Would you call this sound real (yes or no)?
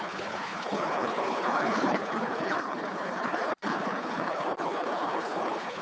no